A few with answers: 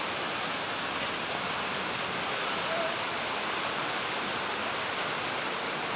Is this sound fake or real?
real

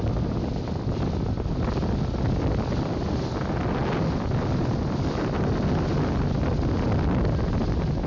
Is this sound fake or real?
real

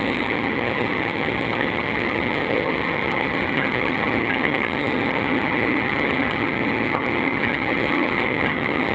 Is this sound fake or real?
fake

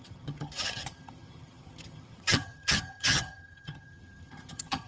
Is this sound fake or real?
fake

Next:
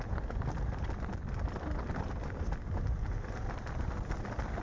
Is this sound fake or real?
real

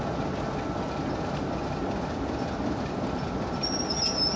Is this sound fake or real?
real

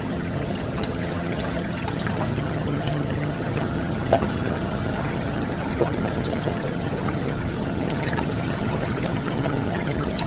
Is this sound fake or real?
fake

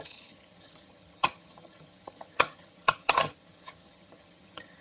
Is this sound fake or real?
fake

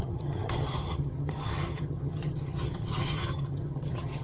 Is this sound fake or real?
fake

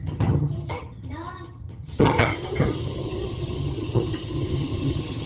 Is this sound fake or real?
fake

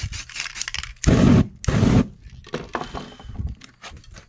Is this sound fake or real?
real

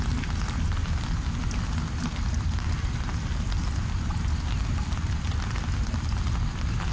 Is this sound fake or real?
real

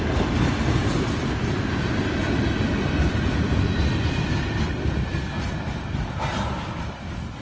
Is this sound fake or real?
real